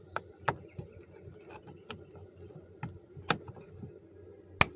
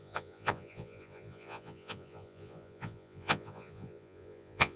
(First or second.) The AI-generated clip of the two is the second